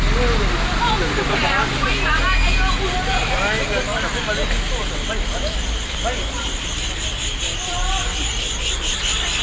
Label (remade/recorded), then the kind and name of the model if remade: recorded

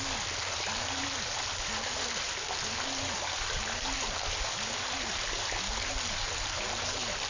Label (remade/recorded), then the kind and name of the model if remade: recorded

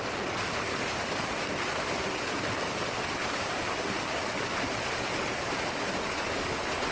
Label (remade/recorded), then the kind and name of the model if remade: recorded